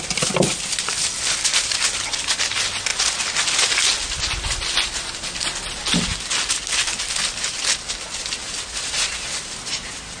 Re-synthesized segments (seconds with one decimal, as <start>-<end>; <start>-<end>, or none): none